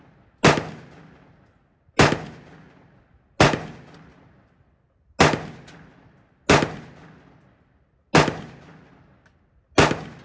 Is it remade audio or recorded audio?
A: recorded